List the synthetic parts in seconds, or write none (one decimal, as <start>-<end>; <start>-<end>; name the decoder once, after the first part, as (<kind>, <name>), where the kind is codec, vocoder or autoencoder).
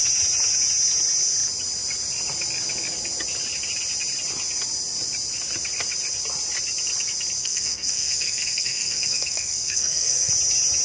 7.4-10.3 (codec, SNAC)